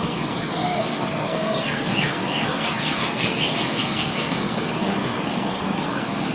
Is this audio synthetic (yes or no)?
yes